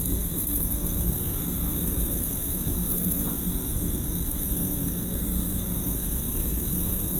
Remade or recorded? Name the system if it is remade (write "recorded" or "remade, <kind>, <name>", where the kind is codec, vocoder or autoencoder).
remade, codec, SNAC